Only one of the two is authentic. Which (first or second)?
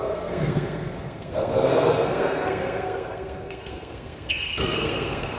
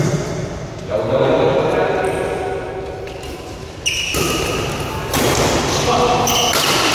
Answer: second